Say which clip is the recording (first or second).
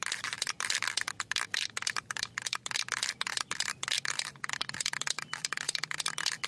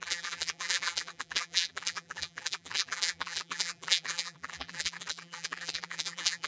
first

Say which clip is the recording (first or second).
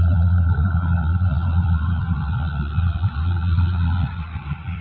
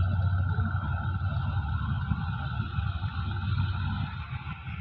second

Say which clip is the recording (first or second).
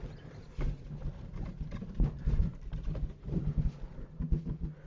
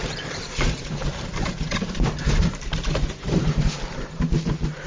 first